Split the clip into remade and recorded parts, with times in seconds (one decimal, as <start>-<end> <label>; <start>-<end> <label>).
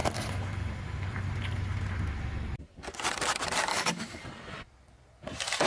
0.0-3.7 recorded; 3.7-4.2 remade; 4.2-5.7 recorded